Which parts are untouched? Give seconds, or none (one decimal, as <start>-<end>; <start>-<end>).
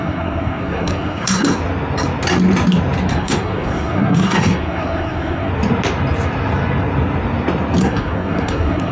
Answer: 1.6-3.1; 5.5-7.8